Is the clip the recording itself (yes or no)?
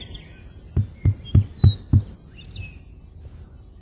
yes